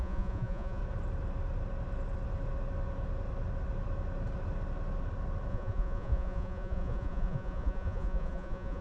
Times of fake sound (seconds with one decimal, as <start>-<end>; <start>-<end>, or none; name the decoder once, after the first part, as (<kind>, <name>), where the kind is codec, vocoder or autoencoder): 0.0-0.8 (vocoder, Vocos); 5.5-8.8